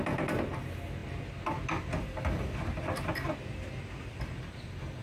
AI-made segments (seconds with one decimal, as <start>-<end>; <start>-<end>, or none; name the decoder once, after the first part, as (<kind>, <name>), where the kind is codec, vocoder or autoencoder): none